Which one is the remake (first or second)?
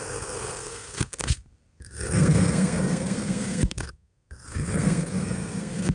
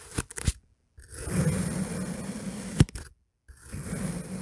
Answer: first